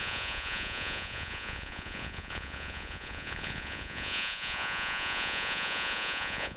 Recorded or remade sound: remade